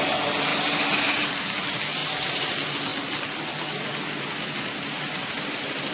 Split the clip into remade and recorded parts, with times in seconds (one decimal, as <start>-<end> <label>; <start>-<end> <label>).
0.0-0.5 recorded; 0.5-1.3 remade; 1.3-2.0 recorded; 2.0-2.5 remade; 2.5-5.9 recorded